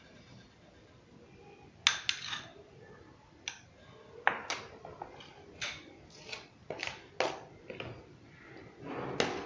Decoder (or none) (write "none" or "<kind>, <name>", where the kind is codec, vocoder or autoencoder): none